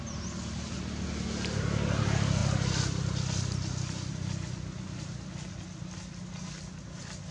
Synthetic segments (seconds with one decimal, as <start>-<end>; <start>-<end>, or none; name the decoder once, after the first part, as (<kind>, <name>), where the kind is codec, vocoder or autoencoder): none